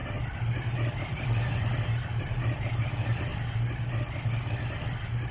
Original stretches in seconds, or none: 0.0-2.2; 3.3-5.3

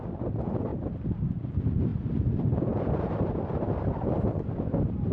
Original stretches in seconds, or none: 0.0-0.7; 1.5-1.9; 4.5-5.1

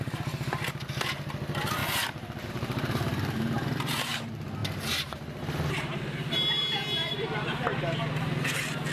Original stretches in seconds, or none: 1.8-2.5

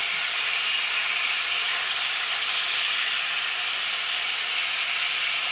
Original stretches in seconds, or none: 0.6-1.0; 3.1-5.5

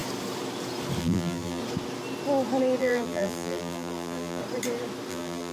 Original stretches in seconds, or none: 0.0-1.0; 1.6-2.8; 4.4-5.1

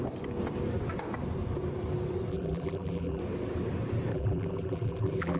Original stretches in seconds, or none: 0.0-2.3; 3.2-4.1

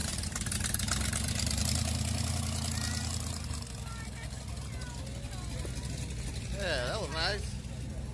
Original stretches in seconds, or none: 1.6-8.1

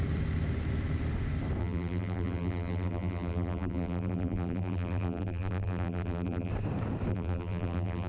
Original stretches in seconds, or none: 0.0-1.6; 6.5-7.1